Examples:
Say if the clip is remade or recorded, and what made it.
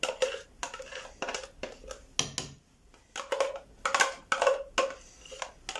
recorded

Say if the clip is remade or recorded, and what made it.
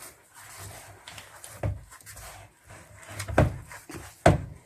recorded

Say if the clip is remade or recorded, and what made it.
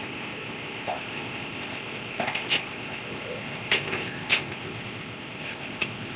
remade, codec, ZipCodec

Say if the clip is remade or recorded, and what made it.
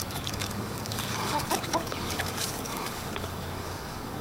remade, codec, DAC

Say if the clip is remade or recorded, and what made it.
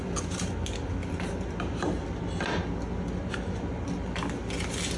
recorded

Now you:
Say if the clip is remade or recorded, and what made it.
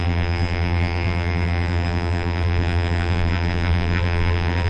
remade, vocoder, BigVGAN v2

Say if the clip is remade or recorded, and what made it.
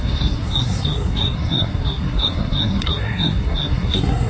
remade, codec, SNAC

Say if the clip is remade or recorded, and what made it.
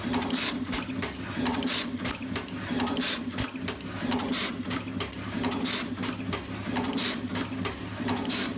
recorded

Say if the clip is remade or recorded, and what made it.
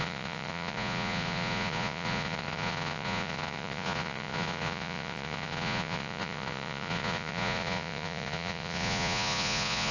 remade, vocoder, Vocos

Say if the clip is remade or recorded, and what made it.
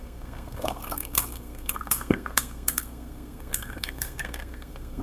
remade, codec, SNAC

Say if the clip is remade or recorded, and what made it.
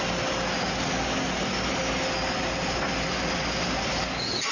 recorded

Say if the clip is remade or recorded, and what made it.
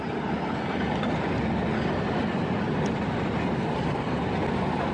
recorded